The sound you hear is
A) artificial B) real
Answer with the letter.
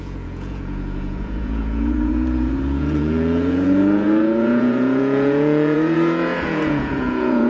A